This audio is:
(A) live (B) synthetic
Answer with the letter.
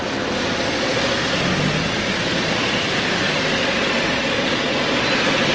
A